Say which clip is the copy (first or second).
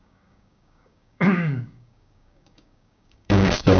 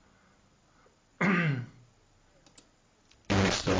first